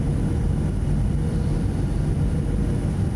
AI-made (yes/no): no